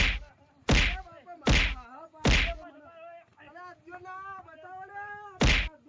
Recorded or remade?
recorded